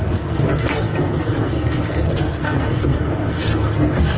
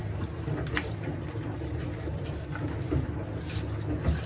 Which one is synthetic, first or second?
first